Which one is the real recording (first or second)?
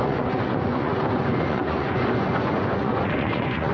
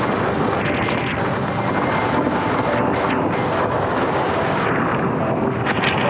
second